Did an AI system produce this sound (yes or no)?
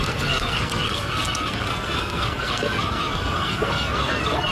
yes